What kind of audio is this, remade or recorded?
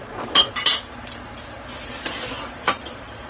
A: recorded